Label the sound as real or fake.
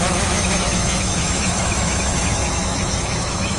fake